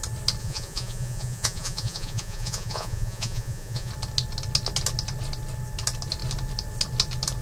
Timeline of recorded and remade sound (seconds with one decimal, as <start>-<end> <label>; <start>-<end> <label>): 0.0-0.4 recorded; 0.4-3.9 remade; 3.9-7.4 recorded